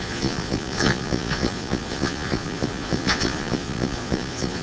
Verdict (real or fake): fake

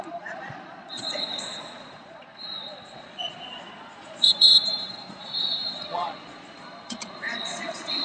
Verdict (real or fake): fake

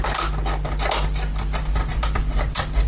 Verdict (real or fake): real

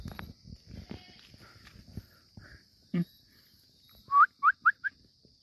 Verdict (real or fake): fake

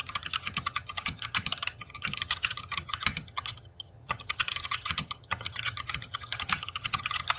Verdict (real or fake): fake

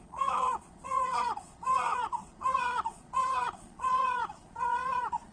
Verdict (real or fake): fake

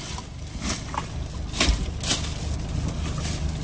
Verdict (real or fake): real